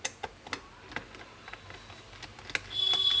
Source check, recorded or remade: recorded